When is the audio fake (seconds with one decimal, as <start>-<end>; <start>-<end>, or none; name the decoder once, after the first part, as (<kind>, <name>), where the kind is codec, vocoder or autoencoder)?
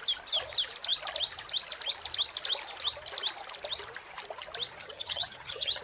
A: 4.8-5.8 (vocoder, HiFi-GAN)